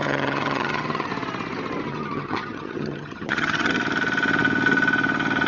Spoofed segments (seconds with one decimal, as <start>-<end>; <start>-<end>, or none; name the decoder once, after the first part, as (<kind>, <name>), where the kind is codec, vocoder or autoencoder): 0.0-1.1 (vocoder, HiFi-GAN); 1.9-3.7